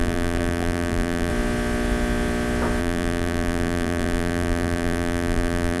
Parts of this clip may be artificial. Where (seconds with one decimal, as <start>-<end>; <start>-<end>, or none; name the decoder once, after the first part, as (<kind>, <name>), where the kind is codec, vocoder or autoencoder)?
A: 0.0-1.3 (vocoder, BigVGAN v2); 2.8-5.8